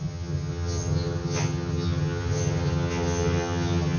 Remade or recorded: remade